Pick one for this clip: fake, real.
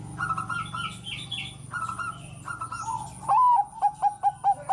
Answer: real